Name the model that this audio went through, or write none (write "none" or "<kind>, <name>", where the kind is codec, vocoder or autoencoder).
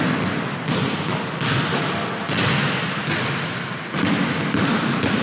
none